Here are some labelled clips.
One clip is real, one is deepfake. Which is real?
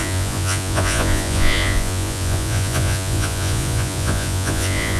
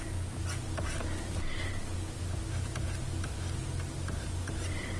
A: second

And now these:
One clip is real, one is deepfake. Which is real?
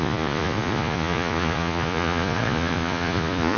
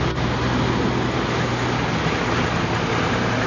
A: second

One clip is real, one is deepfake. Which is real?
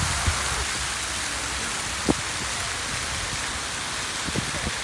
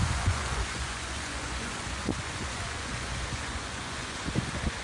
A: first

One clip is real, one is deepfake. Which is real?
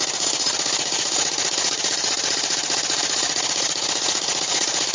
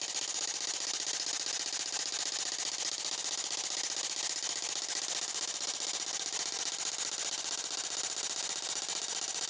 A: second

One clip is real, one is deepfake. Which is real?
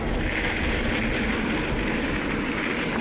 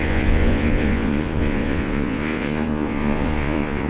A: first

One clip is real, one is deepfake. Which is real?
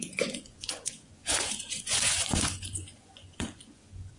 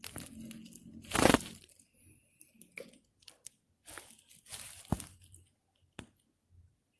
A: second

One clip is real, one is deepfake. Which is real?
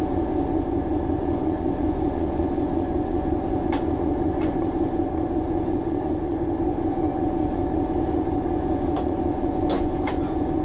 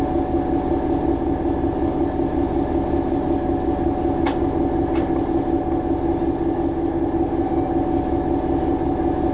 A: second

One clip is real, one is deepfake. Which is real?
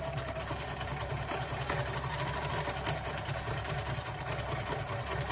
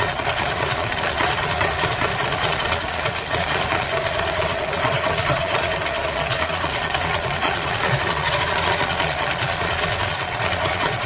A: first